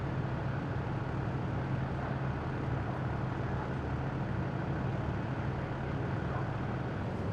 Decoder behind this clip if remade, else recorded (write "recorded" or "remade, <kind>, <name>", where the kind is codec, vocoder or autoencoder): recorded